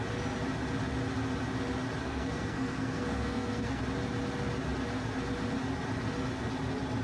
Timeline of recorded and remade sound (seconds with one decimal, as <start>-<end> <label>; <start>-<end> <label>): 0.0-2.0 recorded; 2.0-3.8 remade; 3.8-7.0 recorded